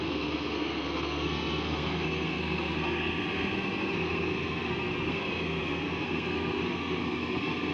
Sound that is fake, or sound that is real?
fake